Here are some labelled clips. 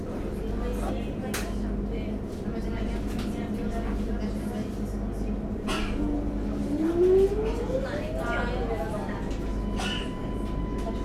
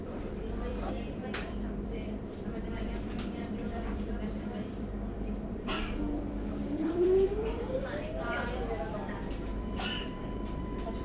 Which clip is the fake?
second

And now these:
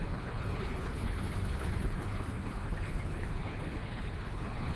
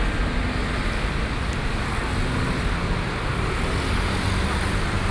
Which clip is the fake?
first